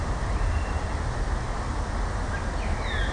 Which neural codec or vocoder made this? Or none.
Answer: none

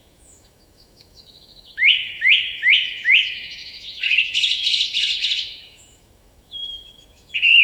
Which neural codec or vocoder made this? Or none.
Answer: autoencoder, DAC-VAE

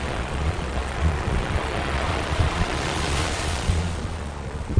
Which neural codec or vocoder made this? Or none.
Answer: vocoder, Vocos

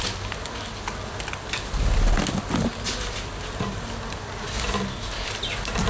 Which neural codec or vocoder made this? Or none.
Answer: none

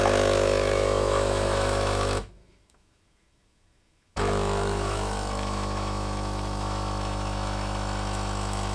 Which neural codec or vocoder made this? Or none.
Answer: autoencoder, DAC-VAE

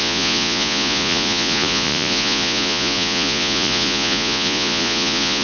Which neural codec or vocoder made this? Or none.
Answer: vocoder, Vocos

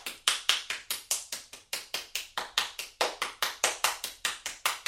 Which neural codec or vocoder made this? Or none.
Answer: vocoder, BigVGAN v2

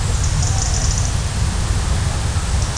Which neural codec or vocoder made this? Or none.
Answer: none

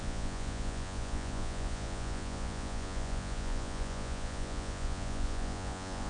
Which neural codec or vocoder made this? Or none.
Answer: vocoder, Vocos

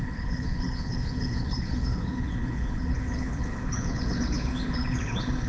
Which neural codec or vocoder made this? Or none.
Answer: codec, HILCodec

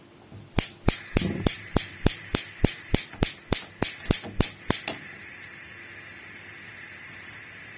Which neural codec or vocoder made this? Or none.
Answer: none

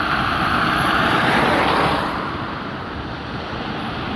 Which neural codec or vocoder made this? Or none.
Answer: vocoder, BigVGAN v2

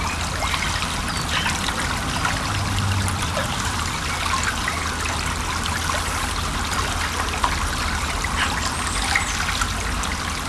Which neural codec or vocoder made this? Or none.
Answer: none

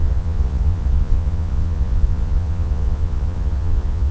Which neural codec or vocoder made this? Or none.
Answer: vocoder, Vocos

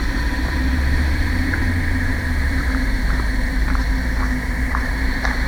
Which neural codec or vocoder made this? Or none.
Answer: vocoder, BigVGAN v2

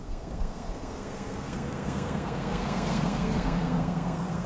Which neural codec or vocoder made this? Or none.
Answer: codec, SNAC